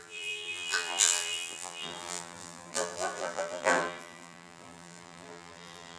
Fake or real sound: fake